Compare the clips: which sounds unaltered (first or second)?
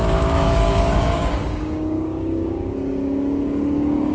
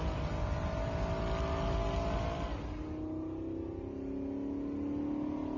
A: second